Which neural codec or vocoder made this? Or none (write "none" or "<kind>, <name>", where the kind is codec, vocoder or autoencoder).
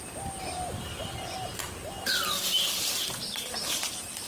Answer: none